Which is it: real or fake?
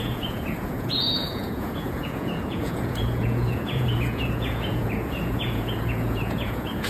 fake